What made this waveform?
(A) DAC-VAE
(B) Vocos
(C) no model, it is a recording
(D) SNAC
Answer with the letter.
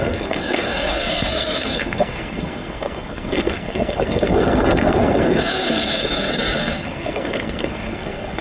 D